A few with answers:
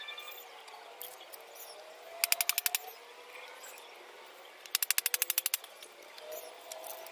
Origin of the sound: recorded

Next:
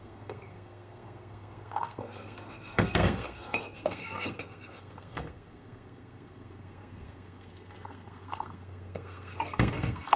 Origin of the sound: remade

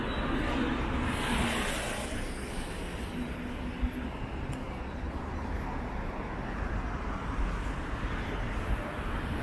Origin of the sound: recorded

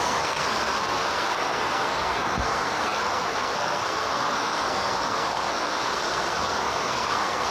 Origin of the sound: remade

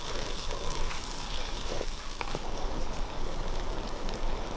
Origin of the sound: remade